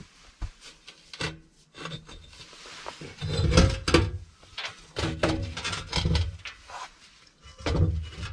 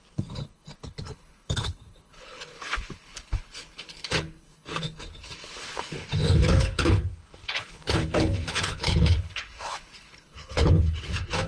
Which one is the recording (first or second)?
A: first